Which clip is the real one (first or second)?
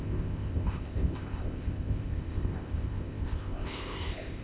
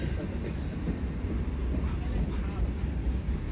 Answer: second